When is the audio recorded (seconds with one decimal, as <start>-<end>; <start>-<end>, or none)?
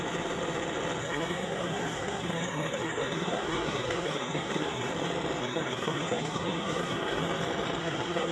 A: 0.0-1.0; 4.9-5.4; 7.2-7.8